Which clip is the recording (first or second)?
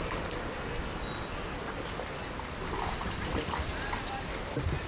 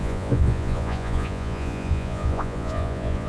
first